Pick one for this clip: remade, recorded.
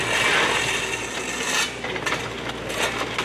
recorded